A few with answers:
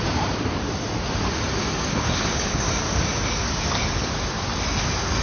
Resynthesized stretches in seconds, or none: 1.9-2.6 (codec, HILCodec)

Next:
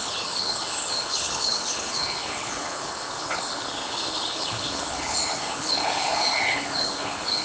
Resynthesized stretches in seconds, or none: 0.0-7.4 (codec, HILCodec)

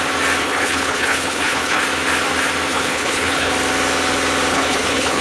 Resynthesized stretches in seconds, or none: 0.4-1.8 (codec, HILCodec); 2.7-3.5; 4.5-5.2